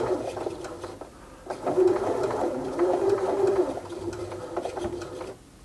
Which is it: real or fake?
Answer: fake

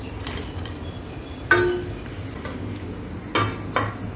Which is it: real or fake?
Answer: real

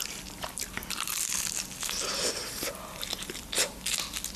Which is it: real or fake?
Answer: real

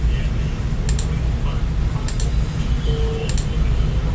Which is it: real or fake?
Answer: real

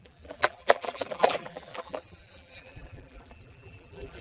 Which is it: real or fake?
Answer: fake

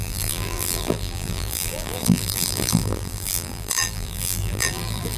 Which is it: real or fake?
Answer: fake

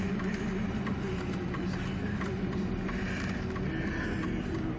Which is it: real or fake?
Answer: real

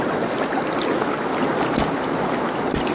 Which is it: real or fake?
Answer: real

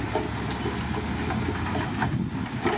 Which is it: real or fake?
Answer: real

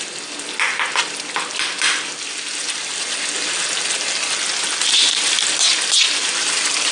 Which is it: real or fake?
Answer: real